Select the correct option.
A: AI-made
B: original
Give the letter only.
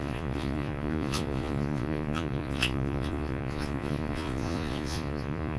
A